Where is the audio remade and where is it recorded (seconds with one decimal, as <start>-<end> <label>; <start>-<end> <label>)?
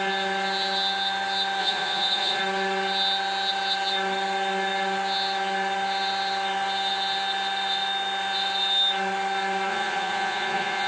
0.0-1.6 recorded; 1.6-2.4 remade; 2.4-9.7 recorded; 9.7-10.9 remade